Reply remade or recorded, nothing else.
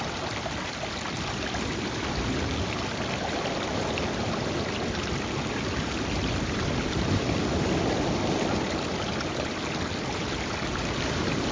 recorded